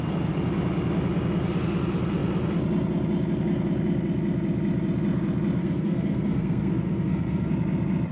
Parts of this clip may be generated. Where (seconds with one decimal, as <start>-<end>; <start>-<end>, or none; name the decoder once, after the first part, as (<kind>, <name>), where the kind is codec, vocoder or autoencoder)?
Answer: 5.6-7.5 (codec, SNAC)